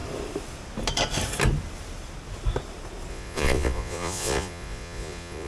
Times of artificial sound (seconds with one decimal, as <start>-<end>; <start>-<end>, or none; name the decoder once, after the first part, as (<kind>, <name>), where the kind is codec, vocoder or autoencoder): 3.1-5.5 (vocoder, Vocos)